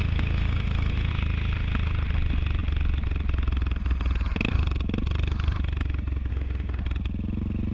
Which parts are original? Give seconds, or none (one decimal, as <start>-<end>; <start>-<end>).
1.1-6.3; 6.8-7.7